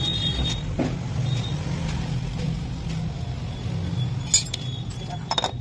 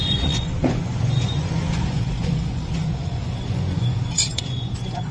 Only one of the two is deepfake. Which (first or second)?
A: second